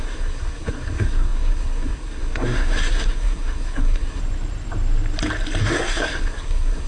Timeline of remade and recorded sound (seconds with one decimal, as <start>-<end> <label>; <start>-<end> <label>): 0.0-4.2 remade; 4.2-5.6 recorded; 5.6-6.9 remade